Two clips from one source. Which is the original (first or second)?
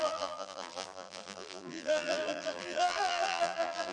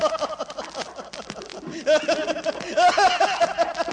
second